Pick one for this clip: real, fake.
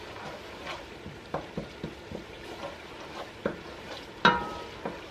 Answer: real